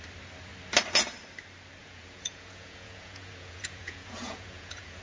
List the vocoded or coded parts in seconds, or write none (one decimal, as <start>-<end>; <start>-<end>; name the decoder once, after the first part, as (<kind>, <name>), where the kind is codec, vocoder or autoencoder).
1.8-5.0 (vocoder, Vocos)